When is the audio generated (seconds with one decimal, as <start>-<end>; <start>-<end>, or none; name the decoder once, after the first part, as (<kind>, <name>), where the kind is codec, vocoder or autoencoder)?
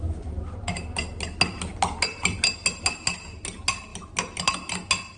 none